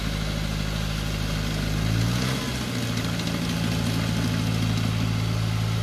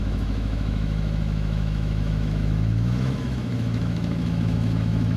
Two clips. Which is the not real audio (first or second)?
second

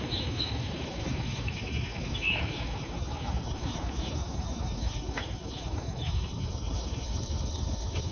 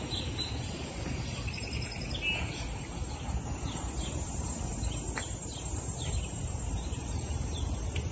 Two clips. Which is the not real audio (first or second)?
first